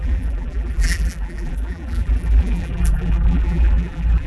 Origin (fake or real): fake